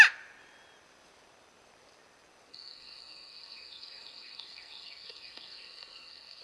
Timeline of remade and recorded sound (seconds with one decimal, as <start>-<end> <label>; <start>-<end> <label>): 0.0-2.5 recorded; 2.5-6.4 remade